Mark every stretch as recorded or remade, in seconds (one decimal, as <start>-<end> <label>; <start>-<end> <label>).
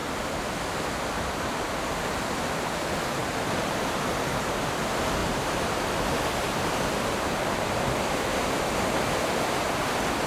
0.0-3.2 recorded; 3.2-4.1 remade; 4.1-5.2 recorded; 5.2-8.2 remade; 8.2-10.3 recorded